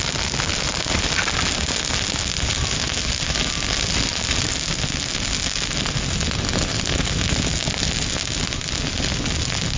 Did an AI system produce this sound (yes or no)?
no